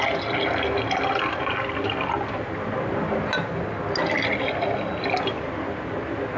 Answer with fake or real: real